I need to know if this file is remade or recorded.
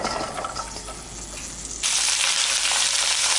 recorded